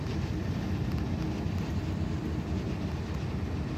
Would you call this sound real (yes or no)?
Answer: yes